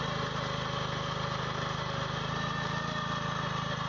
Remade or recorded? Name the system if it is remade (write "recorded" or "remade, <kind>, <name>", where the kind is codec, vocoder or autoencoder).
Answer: recorded